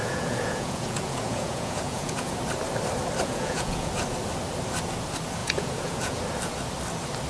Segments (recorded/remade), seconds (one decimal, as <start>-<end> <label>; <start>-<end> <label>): 0.0-2.4 remade; 2.4-3.2 recorded; 3.2-3.9 remade; 3.9-5.4 recorded; 5.4-6.2 remade; 6.2-7.3 recorded